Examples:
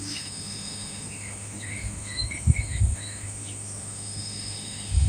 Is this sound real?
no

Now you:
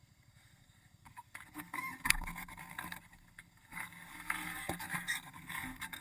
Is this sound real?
no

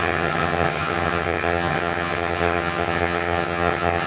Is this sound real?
no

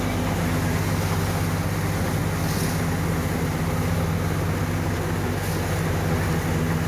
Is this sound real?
yes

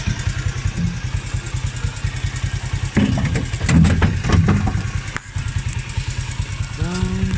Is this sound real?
yes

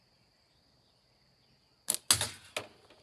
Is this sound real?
yes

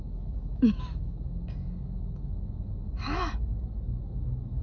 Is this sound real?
no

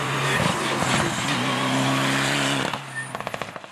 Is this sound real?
yes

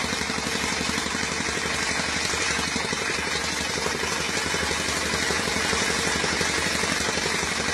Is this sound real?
yes